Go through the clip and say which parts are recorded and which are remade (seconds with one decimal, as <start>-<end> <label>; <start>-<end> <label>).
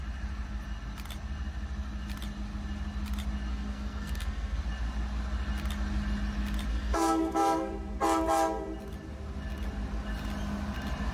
0.0-3.5 recorded; 3.5-4.6 remade; 4.6-6.7 recorded; 6.7-7.7 remade; 7.7-11.1 recorded